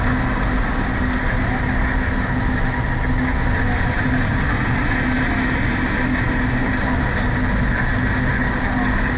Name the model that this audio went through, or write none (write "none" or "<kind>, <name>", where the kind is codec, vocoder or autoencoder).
none